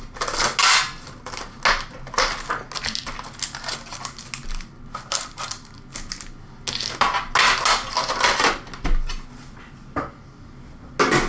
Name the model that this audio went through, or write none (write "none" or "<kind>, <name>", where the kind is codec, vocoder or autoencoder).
none